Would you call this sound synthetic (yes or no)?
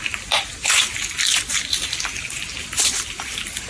no